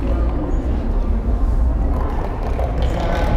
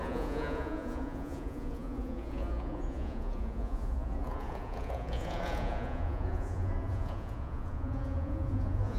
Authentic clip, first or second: first